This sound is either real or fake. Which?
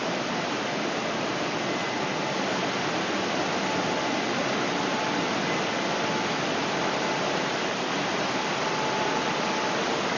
real